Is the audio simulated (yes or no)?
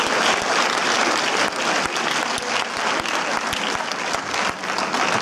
no